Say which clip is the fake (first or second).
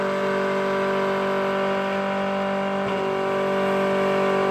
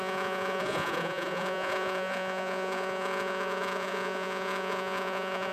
second